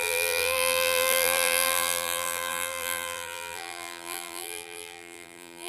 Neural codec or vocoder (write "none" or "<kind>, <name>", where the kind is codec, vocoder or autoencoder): vocoder, BigVGAN v2